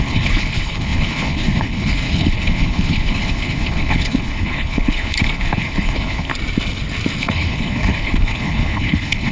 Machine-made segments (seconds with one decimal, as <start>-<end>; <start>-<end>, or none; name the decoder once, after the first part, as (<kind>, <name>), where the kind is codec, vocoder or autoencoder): 0.0-6.3 (codec, HILCodec); 7.2-9.3